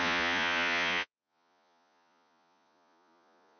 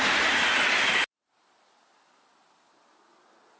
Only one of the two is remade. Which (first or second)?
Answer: first